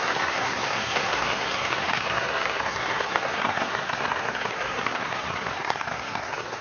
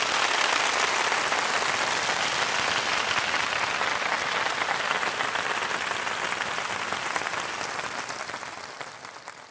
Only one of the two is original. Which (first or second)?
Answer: second